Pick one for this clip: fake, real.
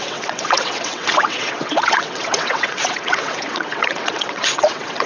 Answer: fake